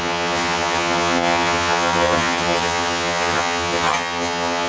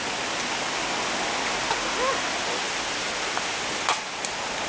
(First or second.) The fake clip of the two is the first